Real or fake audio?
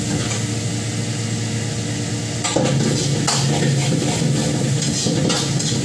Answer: real